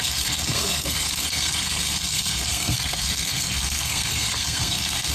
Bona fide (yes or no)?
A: no